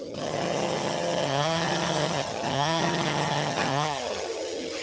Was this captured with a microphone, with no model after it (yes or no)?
no